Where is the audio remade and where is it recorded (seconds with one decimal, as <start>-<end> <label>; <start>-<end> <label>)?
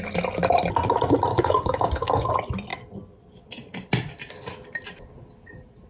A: 0.0-1.3 recorded; 1.3-2.3 remade; 2.3-5.9 recorded